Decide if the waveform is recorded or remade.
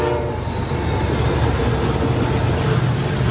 recorded